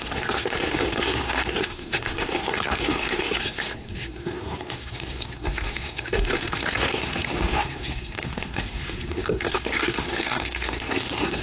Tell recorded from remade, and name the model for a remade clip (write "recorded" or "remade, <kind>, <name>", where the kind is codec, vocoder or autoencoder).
remade, codec, SNAC